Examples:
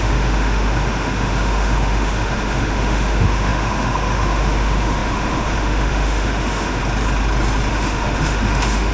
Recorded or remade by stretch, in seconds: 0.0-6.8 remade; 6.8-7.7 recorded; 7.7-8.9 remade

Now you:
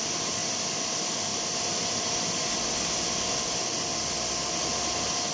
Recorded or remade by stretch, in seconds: 0.0-5.3 recorded

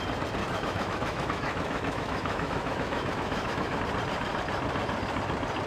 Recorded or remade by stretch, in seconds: 0.0-0.4 recorded; 0.4-3.8 remade; 3.8-5.7 recorded

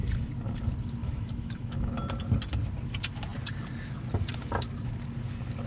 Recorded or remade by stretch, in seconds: 0.0-1.0 recorded; 1.0-1.9 remade; 1.9-5.7 recorded

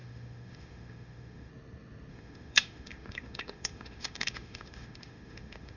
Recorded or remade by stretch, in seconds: 0.0-1.5 remade; 1.5-2.1 recorded; 2.1-5.8 remade

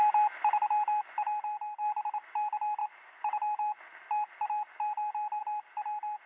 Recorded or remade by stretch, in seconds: 0.0-6.3 recorded

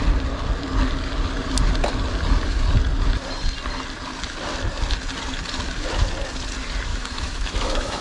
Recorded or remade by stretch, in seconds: 0.0-6.9 recorded; 6.9-8.0 remade

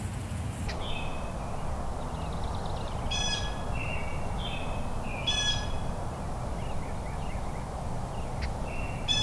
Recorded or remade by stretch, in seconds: 0.0-9.2 recorded